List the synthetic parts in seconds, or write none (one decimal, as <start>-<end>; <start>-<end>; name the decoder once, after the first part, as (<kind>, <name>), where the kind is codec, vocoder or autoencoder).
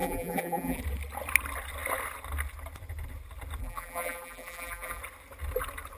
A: 0.0-0.8 (vocoder, BigVGAN v2); 3.6-5.0